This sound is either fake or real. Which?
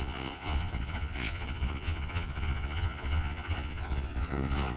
fake